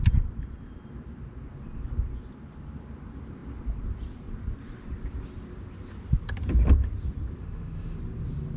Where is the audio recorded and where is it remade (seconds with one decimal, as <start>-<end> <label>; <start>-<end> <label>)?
0.0-7.4 recorded; 7.4-8.0 remade; 8.0-8.6 recorded